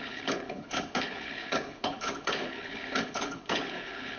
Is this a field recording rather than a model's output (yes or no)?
no